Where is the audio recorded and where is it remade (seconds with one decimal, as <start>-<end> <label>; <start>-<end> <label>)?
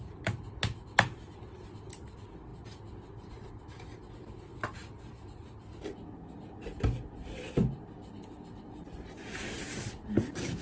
0.0-10.6 recorded